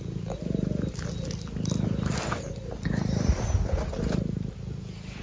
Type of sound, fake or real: real